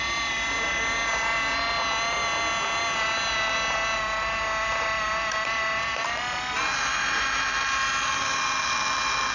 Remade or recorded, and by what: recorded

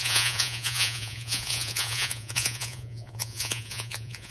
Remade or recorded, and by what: remade, vocoder, Vocos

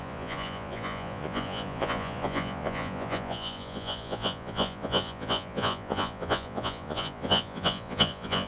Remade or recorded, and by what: remade, vocoder, Vocos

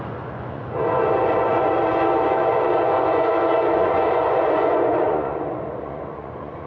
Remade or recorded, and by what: remade, vocoder, Vocos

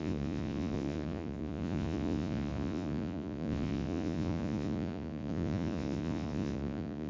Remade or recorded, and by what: remade, vocoder, Vocos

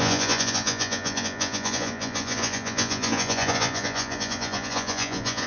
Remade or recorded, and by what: remade, vocoder, Vocos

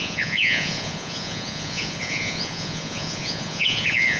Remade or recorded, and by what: remade, vocoder, Vocos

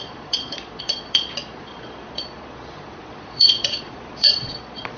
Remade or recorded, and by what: remade, vocoder, Vocos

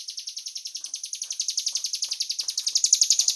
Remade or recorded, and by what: recorded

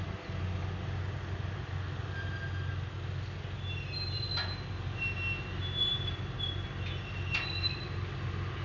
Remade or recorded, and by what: recorded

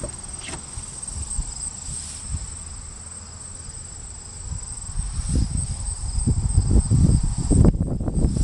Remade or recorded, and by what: recorded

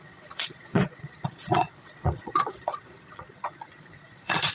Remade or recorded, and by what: remade, vocoder, Vocos